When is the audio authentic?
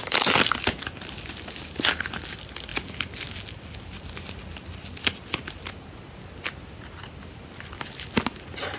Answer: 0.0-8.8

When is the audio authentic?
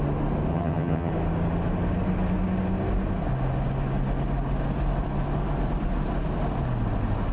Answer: 0.0-0.5; 1.1-7.3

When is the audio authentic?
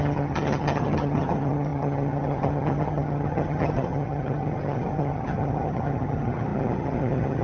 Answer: none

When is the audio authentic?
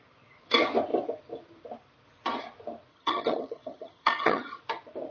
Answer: 0.0-2.9; 4.6-5.1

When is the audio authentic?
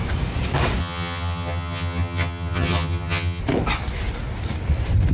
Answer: 0.0-0.8; 3.4-5.1